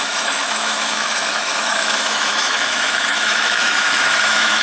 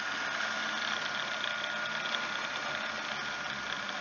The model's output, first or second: first